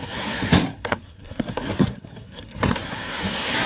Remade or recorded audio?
remade